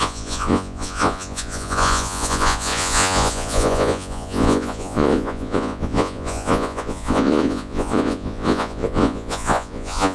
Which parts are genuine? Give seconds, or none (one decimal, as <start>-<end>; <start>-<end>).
none

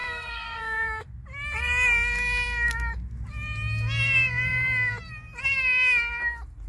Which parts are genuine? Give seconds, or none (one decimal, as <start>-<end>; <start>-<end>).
1.0-6.7